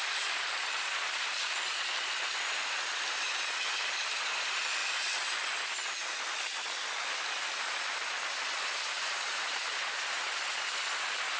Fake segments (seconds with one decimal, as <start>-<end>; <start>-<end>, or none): 0.0-4.8; 6.2-11.4